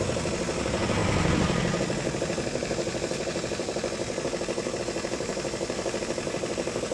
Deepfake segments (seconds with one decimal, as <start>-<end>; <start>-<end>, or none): none

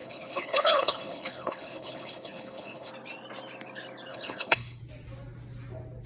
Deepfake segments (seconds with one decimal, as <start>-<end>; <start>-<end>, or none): 0.0-2.9; 4.1-4.8

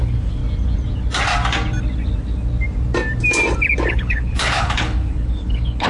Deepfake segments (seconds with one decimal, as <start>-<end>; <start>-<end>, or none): 0.0-0.4; 3.9-5.9

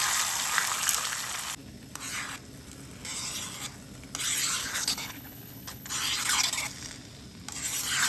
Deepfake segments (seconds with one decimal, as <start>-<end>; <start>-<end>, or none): 4.6-5.9

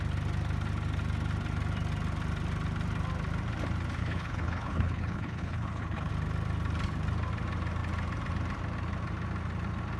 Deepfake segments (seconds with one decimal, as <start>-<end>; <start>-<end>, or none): 4.0-6.1